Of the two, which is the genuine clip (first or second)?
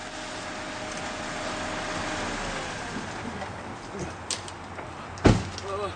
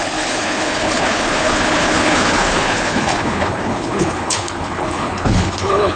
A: first